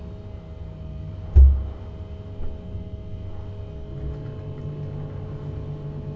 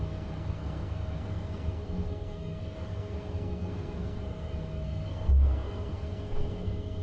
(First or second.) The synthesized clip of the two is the second